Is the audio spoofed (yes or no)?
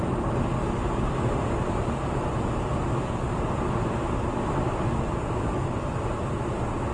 no